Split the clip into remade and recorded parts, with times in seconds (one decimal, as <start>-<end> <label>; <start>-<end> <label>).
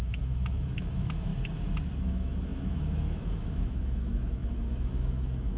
0.0-1.3 remade; 1.3-2.0 recorded; 2.0-5.6 remade